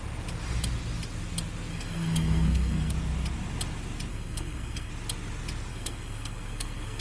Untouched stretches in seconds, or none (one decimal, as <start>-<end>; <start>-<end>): 0.0-1.7; 2.9-4.1; 4.9-5.7